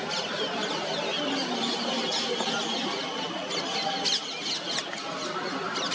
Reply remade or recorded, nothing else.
recorded